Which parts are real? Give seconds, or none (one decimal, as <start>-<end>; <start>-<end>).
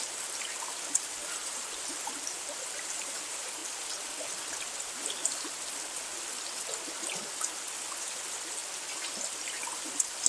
3.6-8.0; 8.6-9.5